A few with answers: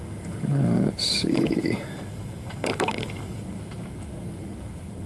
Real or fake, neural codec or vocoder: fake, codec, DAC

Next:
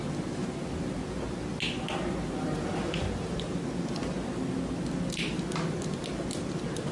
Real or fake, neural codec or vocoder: real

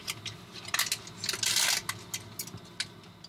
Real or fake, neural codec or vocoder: real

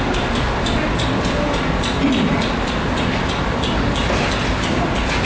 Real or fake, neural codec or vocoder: real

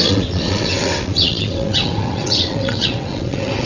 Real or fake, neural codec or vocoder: fake, vocoder, WaveNeXt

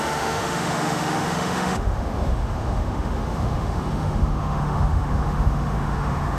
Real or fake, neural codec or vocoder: fake, autoencoder, DAC-VAE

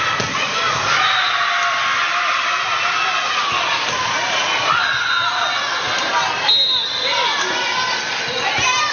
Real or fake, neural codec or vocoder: real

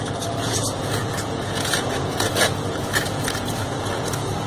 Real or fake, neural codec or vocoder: fake, vocoder, Vocos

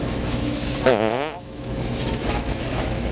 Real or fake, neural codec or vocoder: fake, autoencoder, DAC-VAE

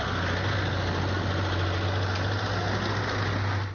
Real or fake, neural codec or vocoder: real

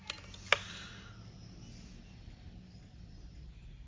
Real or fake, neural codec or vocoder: real